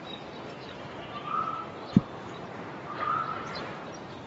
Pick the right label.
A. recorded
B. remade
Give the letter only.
B